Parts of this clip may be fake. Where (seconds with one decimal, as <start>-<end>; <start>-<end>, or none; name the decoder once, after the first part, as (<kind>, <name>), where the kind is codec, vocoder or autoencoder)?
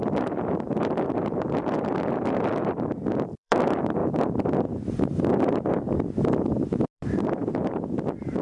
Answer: 0.0-4.0 (vocoder, BigVGAN v2); 5.8-8.4